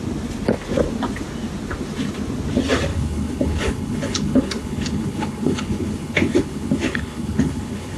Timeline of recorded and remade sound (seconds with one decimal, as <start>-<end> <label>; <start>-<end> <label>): 0.0-2.9 recorded; 2.9-8.0 remade